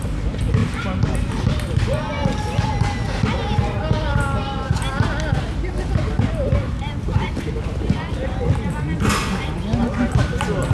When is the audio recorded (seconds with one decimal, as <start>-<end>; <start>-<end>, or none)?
0.0-0.6; 1.3-10.7